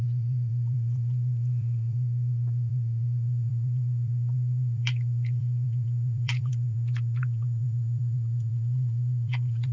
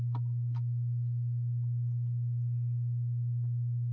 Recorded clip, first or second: second